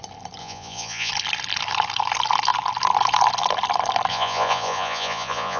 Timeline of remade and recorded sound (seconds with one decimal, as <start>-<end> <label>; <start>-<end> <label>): 0.0-0.4 recorded; 0.4-1.1 remade; 1.1-4.1 recorded; 4.1-5.6 remade